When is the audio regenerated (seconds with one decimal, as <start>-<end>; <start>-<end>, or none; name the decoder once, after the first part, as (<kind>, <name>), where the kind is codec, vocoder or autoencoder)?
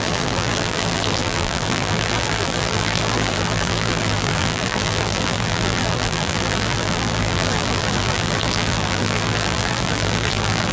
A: 0.0-10.7 (vocoder, BigVGAN v2)